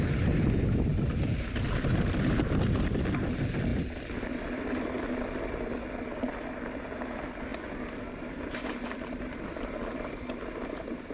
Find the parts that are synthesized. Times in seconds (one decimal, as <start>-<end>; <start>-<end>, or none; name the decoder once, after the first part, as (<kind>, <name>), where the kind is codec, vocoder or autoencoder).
none